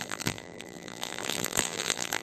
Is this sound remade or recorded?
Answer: remade